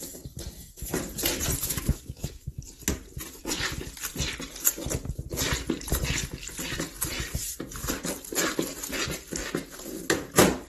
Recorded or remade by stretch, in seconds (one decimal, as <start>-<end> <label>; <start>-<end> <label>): 0.0-1.6 recorded; 1.6-2.6 remade; 2.6-10.7 recorded